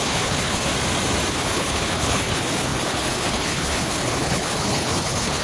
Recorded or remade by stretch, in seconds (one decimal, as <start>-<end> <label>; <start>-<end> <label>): 0.0-0.7 remade; 0.7-1.3 recorded; 1.3-5.4 remade